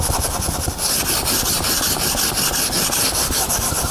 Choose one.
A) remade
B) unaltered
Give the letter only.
B